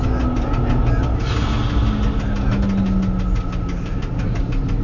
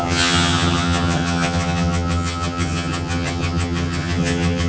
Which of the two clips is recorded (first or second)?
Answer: first